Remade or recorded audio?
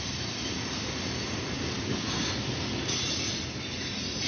recorded